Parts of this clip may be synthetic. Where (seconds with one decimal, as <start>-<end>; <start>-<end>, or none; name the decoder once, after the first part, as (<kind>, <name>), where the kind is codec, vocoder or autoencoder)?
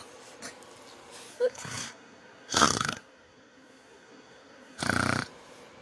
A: 1.3-4.8 (codec, SNAC)